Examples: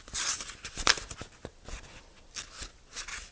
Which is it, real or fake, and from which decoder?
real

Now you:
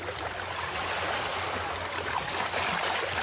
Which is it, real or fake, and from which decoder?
real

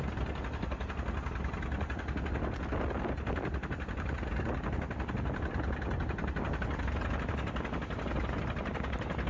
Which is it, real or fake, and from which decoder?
real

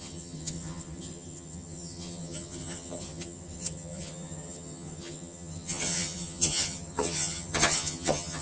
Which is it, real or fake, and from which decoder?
fake, vocoder, HiFi-GAN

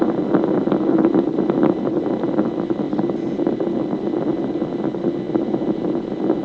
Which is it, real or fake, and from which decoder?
real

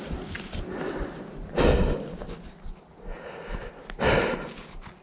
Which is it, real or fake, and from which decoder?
real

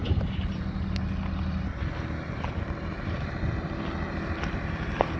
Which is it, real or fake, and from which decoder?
real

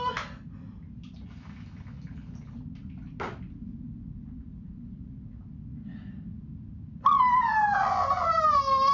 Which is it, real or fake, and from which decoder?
real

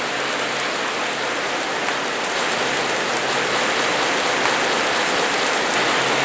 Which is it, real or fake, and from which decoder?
real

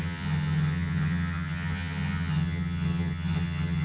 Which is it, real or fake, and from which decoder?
fake, vocoder, HiFi-GAN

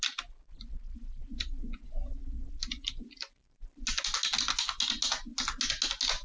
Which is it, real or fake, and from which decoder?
real